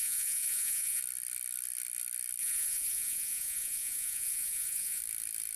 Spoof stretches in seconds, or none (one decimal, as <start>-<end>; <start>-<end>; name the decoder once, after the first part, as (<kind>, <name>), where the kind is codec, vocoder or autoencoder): 0.0-1.0 (vocoder, Vocos); 2.4-5.0